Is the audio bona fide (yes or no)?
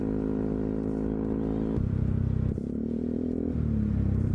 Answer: no